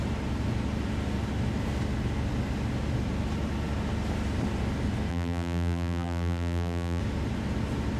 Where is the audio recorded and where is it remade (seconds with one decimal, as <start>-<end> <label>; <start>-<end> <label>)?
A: 0.0-5.1 recorded; 5.1-7.0 remade; 7.0-8.0 recorded